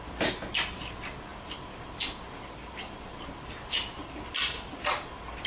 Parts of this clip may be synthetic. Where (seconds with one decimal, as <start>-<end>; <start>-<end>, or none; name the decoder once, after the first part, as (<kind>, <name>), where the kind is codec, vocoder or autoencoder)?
none

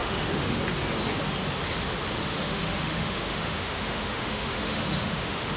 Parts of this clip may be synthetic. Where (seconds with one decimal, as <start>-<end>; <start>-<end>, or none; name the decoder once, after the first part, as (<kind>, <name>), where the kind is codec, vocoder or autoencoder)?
0.0-0.6 (autoencoder, DAC-VAE); 2.2-5.6

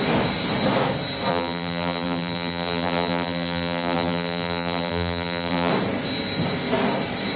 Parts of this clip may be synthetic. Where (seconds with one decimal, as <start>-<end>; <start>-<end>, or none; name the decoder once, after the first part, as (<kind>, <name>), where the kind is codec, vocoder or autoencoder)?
1.3-5.7 (vocoder, BigVGAN v2)